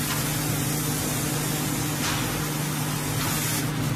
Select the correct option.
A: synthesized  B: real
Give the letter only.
B